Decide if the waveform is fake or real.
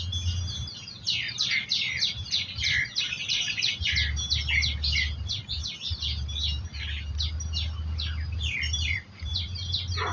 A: real